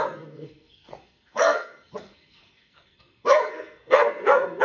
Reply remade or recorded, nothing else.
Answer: remade